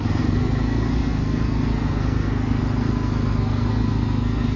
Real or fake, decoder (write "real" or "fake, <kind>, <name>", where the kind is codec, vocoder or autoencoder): fake, codec, SNAC